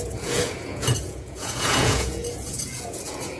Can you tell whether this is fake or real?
fake